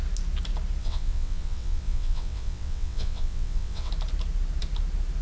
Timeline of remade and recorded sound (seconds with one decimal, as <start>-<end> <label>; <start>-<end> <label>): 0.0-0.8 recorded; 0.8-3.9 remade; 3.9-5.2 recorded